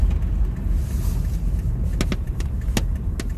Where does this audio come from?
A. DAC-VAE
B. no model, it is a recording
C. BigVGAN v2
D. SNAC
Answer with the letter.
B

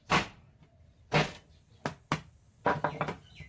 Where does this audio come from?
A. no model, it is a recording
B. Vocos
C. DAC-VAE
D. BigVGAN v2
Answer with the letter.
A